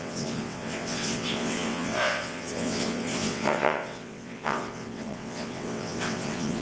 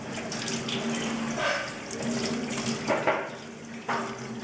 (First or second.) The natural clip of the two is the second